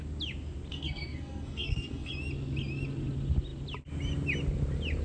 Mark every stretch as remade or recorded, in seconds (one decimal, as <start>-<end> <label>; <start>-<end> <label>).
0.0-0.7 recorded; 0.7-2.1 remade; 2.1-5.0 recorded